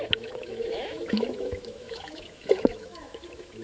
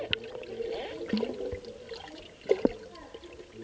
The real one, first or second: second